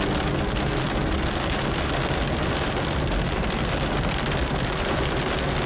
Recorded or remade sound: recorded